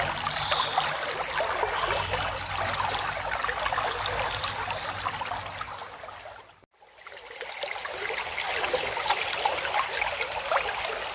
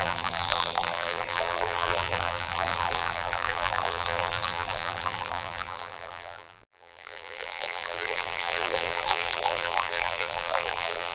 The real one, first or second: first